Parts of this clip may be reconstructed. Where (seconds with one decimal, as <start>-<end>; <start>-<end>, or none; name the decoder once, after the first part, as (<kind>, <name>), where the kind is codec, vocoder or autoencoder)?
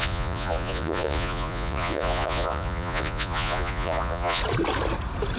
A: 0.0-4.4 (vocoder, Vocos)